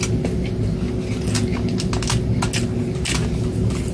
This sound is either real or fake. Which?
real